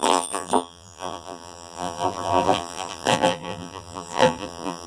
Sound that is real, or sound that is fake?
fake